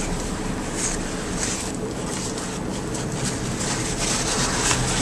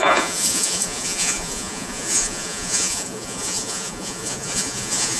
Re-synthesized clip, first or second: second